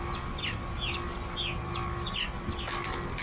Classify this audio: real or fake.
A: real